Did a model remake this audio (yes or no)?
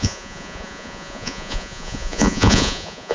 yes